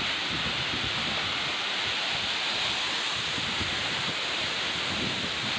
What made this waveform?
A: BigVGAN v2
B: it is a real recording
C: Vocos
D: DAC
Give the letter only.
B